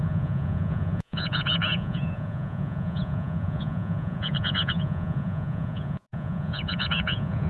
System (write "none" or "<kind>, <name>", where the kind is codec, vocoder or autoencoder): vocoder, Vocos